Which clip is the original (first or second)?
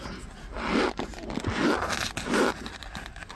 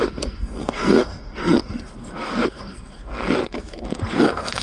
first